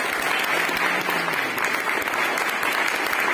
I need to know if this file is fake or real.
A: real